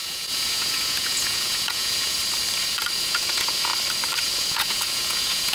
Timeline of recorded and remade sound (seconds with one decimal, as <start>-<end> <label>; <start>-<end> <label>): 0.0-2.2 remade; 2.2-3.0 recorded; 3.0-3.7 remade; 3.7-4.2 recorded; 4.2-5.5 remade